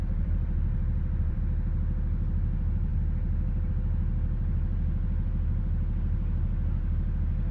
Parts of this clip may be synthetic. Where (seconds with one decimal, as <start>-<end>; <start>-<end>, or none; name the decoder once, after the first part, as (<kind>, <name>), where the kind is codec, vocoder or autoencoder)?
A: 0.0-1.4 (vocoder, BigVGAN v2)